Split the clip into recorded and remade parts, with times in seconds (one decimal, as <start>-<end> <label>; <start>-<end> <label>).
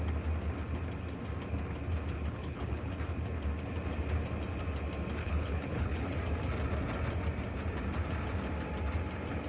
0.0-2.4 recorded; 2.4-2.9 remade; 2.9-5.2 recorded; 5.2-6.2 remade; 6.2-9.5 recorded